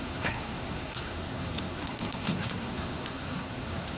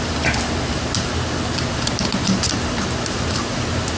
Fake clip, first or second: first